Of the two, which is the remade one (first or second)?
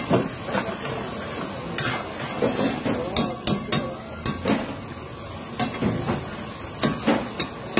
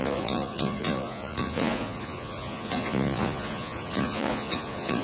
second